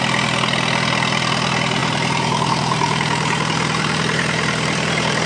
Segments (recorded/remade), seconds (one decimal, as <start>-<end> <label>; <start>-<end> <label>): 0.0-1.8 recorded; 1.8-5.3 remade